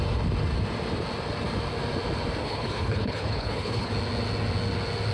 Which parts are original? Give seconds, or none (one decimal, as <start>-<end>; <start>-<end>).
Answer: 0.0-2.4; 3.9-5.1